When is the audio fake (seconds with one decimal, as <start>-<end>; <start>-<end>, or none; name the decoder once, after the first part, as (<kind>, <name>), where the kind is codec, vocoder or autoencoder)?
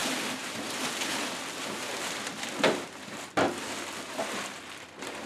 none